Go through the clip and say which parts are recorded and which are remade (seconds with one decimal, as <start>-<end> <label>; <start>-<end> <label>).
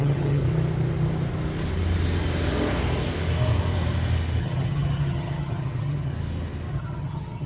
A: 0.0-0.4 remade; 0.4-4.4 recorded; 4.4-6.1 remade; 6.1-6.7 recorded; 6.7-7.5 remade